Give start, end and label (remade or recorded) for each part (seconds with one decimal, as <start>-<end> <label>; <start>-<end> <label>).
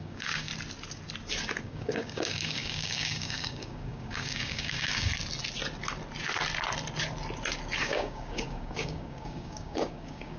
0.0-0.5 remade; 0.5-1.6 recorded; 1.6-5.1 remade; 5.1-7.8 recorded; 7.8-10.4 remade